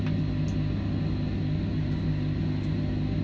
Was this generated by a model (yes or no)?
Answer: no